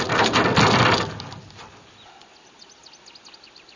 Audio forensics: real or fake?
real